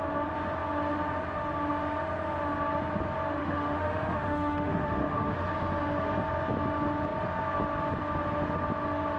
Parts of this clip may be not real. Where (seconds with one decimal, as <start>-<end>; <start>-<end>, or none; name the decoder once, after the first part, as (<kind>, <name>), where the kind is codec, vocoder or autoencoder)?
3.4-5.5 (autoencoder, DAC-VAE)